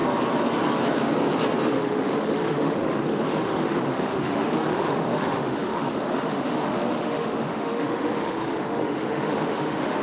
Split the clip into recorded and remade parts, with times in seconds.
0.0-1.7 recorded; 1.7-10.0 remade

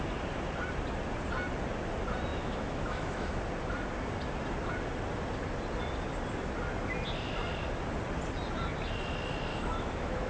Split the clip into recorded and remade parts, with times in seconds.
0.0-2.3 recorded; 2.3-3.4 remade; 3.4-9.5 recorded; 9.5-10.3 remade

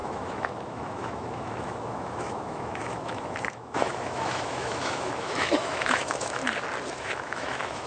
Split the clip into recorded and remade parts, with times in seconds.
0.0-6.4 remade; 6.4-6.9 recorded; 6.9-7.9 remade

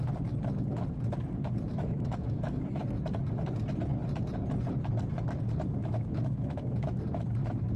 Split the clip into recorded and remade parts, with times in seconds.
0.0-1.7 recorded; 1.7-2.8 remade; 2.8-5.8 recorded; 5.8-7.0 remade; 7.0-7.8 recorded

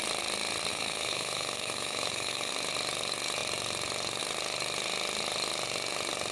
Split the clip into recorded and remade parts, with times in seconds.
0.0-0.7 recorded; 0.7-2.5 remade; 2.5-6.3 recorded

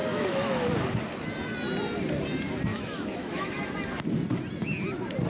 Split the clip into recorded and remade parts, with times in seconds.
0.0-0.7 remade; 0.7-2.7 recorded; 2.7-3.6 remade; 3.6-5.3 recorded

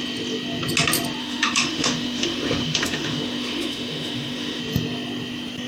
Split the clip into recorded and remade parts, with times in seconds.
0.0-1.2 recorded; 1.2-4.6 remade; 4.6-5.7 recorded

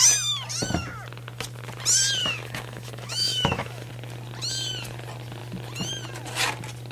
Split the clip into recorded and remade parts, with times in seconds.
0.0-2.2 recorded; 2.2-3.9 remade; 3.9-6.9 recorded